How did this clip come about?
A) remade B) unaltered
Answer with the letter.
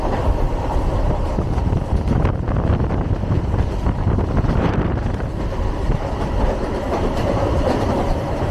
A